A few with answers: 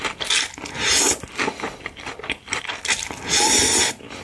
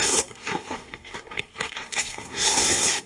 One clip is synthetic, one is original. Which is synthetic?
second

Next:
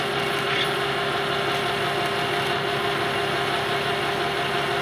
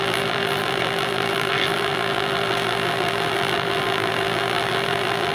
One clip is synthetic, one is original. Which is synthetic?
second